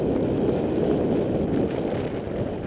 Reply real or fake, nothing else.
real